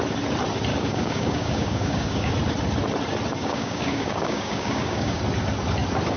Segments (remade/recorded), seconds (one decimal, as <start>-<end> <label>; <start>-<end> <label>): 0.0-0.7 recorded; 0.7-2.3 remade; 2.3-3.4 recorded; 3.4-5.2 remade; 5.2-6.2 recorded